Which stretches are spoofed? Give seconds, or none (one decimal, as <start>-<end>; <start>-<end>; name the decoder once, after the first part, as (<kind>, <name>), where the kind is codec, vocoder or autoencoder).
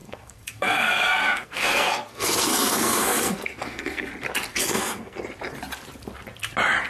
0.0-4.1 (codec, SNAC); 4.5-5.2